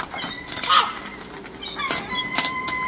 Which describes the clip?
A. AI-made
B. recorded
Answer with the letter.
B